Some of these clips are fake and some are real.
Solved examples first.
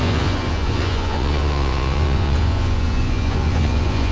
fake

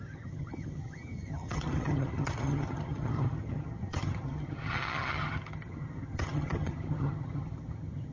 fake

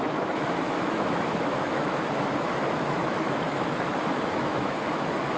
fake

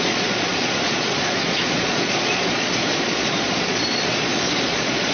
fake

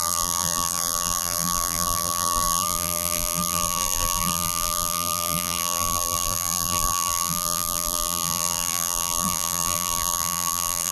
fake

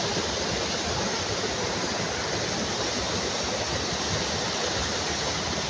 real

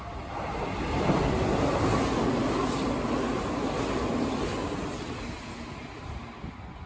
real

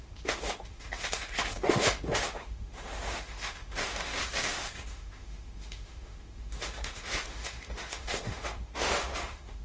fake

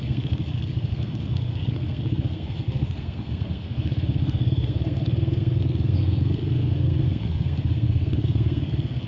fake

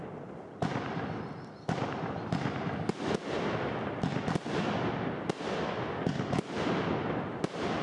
real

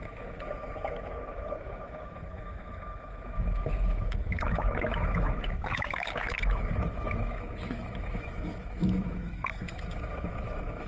fake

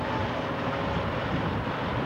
real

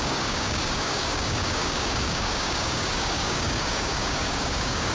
fake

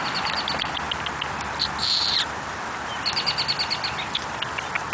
real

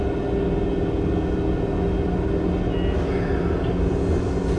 real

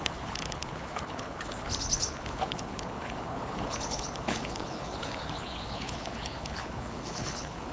fake